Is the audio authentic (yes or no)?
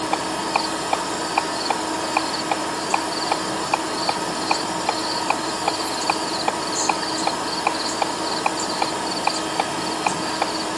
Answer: yes